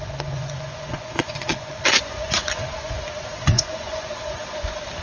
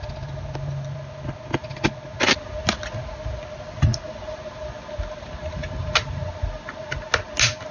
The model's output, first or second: first